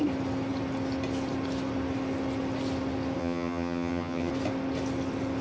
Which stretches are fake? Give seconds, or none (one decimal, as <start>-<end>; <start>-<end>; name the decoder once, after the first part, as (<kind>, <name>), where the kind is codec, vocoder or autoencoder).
3.2-4.3 (vocoder, HiFi-GAN)